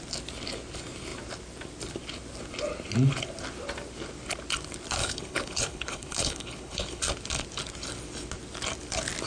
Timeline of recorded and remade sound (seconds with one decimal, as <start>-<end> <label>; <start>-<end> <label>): 0.0-5.0 recorded; 5.0-7.0 remade; 7.0-9.3 recorded